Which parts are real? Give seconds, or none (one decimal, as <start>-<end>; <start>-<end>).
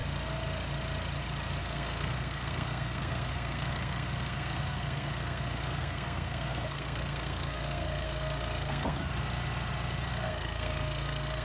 0.0-1.6; 9.0-10.1